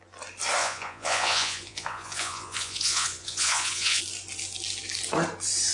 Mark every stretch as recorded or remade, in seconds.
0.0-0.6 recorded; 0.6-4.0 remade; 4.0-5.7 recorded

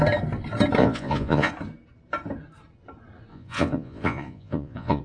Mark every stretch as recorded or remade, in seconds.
0.0-0.8 recorded; 0.8-1.5 remade; 1.5-3.3 recorded; 3.3-5.0 remade

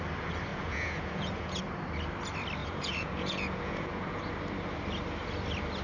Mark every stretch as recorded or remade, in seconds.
0.0-0.5 recorded; 0.5-1.6 remade; 1.6-2.6 recorded; 2.6-4.2 remade; 4.2-5.8 recorded

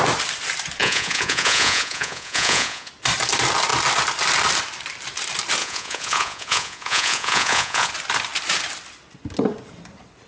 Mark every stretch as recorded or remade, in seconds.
0.0-0.8 recorded; 0.8-2.9 remade; 2.9-5.6 recorded; 5.6-7.9 remade; 7.9-10.3 recorded

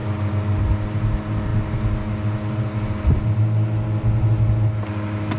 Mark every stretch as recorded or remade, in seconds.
0.0-5.4 recorded